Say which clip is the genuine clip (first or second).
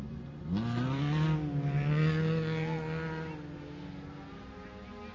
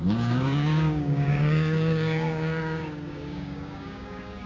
first